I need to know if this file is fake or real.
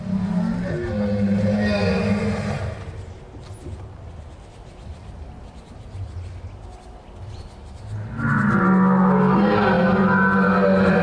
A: real